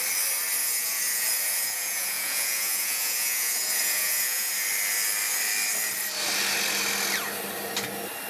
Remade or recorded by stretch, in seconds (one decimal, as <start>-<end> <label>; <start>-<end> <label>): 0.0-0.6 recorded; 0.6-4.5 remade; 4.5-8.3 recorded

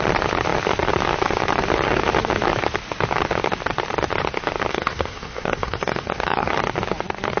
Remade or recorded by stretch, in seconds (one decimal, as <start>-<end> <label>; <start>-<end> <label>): 0.0-4.7 recorded; 4.7-6.5 remade; 6.5-7.4 recorded

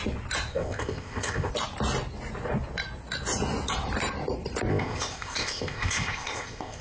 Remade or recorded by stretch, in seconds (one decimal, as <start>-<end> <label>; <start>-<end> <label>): 0.0-0.5 recorded; 0.5-1.5 remade; 1.5-4.7 recorded; 4.7-6.8 remade

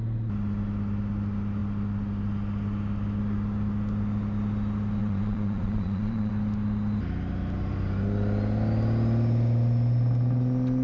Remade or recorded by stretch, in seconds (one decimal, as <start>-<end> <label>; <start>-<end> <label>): 0.0-5.0 recorded; 5.0-6.3 remade; 6.3-10.8 recorded

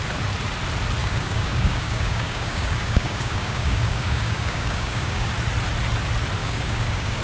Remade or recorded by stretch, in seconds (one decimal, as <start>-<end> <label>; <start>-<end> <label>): 0.0-1.0 recorded; 1.0-5.3 remade; 5.3-6.4 recorded; 6.4-7.2 remade